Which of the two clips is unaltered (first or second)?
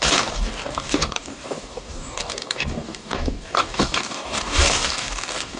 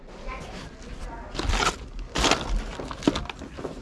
second